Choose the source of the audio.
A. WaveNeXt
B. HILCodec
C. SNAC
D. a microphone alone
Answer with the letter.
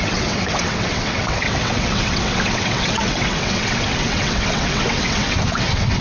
A